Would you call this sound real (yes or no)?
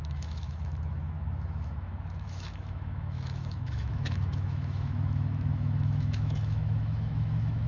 no